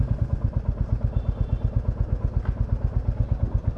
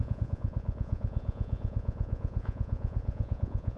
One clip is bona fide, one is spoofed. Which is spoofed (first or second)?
second